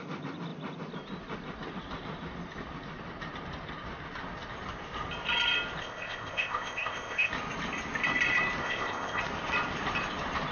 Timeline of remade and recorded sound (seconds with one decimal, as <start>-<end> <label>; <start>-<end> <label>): 0.0-5.8 recorded; 5.8-7.3 remade; 7.3-8.6 recorded; 8.6-9.2 remade; 9.2-10.5 recorded